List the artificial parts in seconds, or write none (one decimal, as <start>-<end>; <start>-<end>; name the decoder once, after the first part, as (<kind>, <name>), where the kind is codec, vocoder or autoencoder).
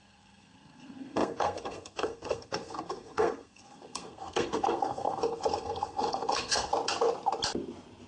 0.0-6.7 (codec, SNAC)